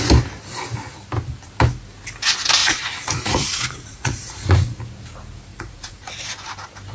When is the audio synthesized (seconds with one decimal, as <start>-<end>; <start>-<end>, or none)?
2.6-4.8; 5.5-6.1